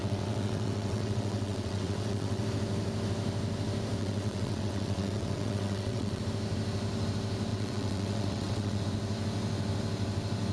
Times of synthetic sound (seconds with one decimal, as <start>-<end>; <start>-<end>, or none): 0.0-2.4; 4.0-6.2; 7.5-8.8